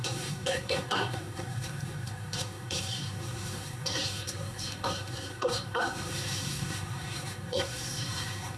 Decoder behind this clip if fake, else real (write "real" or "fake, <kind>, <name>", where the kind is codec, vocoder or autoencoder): fake, codec, SNAC